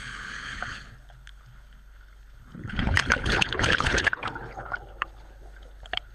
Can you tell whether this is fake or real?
fake